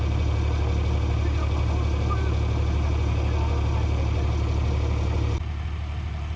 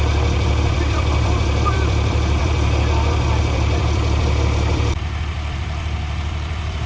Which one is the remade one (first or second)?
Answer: second